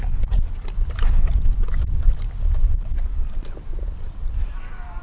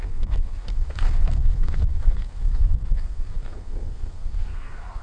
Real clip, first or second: first